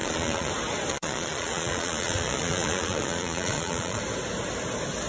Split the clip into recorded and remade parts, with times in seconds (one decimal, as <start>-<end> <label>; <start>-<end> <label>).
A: 0.0-0.5 remade; 0.5-0.9 recorded; 0.9-4.0 remade; 4.0-5.1 recorded